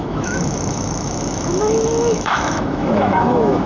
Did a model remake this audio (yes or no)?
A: yes